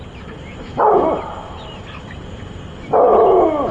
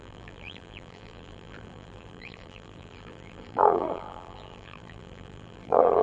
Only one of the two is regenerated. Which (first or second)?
second